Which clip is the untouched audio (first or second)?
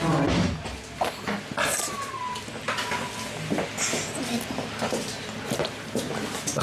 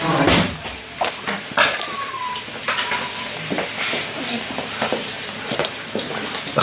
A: first